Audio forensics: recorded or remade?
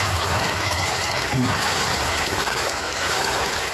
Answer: remade